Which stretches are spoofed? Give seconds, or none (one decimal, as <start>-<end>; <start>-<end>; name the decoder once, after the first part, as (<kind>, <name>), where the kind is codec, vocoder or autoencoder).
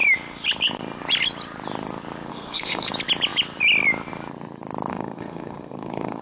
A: 2.3-2.9 (codec, SNAC); 4.9-6.2